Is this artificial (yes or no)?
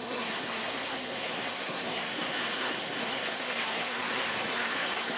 yes